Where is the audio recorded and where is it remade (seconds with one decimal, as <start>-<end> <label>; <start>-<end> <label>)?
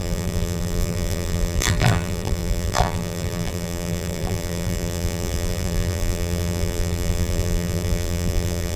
0.0-8.8 remade